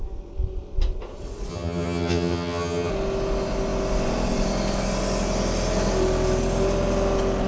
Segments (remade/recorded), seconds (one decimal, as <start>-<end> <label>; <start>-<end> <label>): 0.0-1.5 recorded; 1.5-2.9 remade; 2.9-7.5 recorded